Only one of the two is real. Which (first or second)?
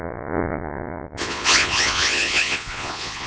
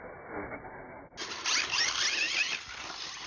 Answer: second